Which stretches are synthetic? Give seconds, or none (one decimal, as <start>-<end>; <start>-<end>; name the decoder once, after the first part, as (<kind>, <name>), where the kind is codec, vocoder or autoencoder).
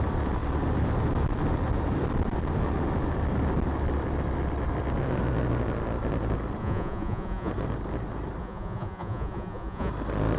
6.6-7.5 (vocoder, Vocos); 8.4-9.9